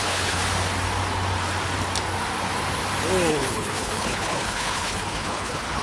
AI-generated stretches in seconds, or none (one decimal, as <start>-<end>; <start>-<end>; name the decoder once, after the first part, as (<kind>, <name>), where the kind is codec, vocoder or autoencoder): 0.0-0.4 (codec, HILCodec); 3.3-5.8